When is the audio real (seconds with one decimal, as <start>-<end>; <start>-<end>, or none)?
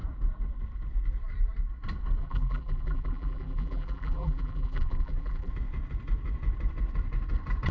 0.0-2.2; 5.5-7.7